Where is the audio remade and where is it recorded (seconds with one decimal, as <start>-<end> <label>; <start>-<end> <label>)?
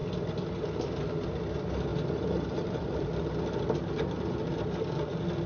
0.0-1.9 recorded; 1.9-3.1 remade; 3.1-5.5 recorded